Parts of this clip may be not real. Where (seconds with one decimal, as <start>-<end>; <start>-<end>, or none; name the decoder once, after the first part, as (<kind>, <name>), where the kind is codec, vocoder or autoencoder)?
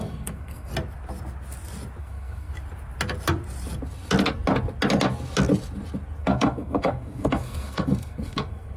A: 0.0-0.7 (codec, SNAC); 2.0-2.5; 6.2-8.8